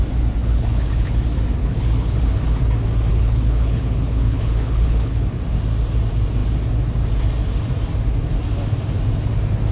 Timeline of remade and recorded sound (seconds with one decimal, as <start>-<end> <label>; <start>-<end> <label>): 0.0-0.4 recorded; 0.4-1.2 remade; 1.2-1.6 recorded; 1.6-2.2 remade; 2.2-3.1 recorded; 3.1-5.3 remade; 5.3-9.7 recorded